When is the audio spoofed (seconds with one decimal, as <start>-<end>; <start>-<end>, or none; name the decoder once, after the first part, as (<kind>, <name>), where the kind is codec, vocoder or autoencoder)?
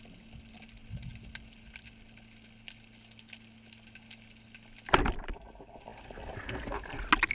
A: none